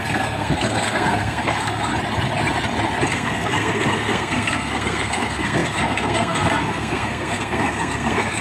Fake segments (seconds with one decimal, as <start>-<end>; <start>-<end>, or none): 0.0-1.9; 3.1-8.4